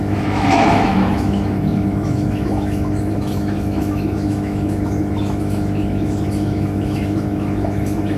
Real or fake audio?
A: fake